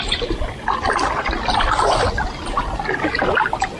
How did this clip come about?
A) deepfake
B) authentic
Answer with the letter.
B